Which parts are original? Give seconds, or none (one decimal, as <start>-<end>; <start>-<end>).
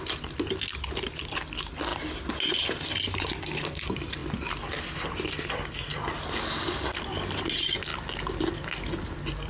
0.0-9.5